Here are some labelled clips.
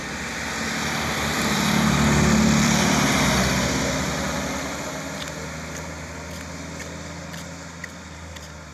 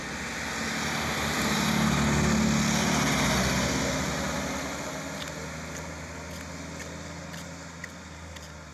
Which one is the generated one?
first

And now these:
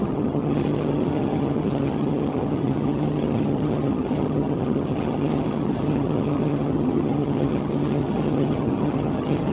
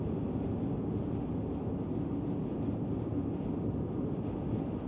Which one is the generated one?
first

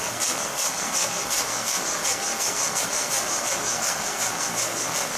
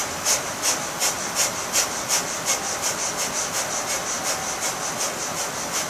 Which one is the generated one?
first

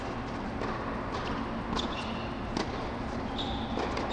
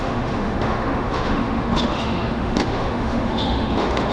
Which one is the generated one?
second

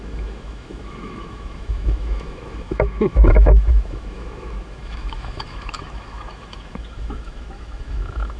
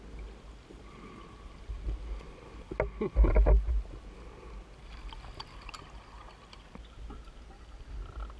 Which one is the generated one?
first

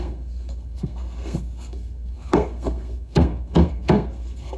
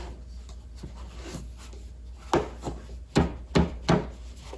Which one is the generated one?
first